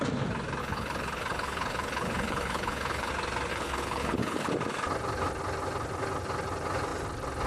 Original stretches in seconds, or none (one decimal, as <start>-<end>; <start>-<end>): 0.0-0.6; 3.1-3.5; 4.5-7.5